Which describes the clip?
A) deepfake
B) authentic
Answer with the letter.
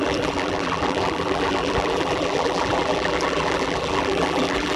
A